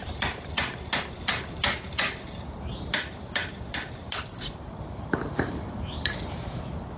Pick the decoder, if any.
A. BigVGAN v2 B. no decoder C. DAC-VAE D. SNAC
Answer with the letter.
A